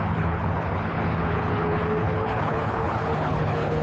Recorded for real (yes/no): no